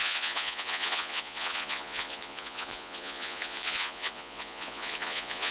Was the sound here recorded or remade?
remade